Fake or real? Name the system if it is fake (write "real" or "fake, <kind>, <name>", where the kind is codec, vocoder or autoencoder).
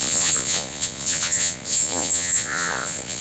fake, vocoder, Vocos